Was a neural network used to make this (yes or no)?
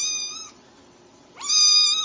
no